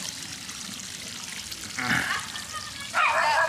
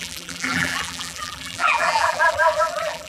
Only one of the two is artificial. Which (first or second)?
second